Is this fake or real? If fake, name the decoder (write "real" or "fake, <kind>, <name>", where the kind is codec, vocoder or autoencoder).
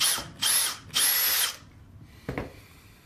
real